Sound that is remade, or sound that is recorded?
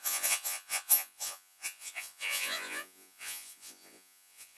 remade